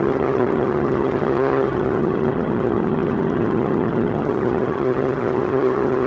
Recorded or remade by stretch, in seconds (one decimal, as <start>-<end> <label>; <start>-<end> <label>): 0.0-6.1 remade